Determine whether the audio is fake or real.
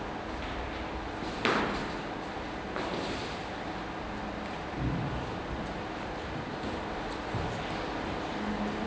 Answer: real